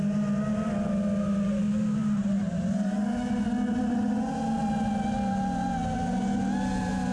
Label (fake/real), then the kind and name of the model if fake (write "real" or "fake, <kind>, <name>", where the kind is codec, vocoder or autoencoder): real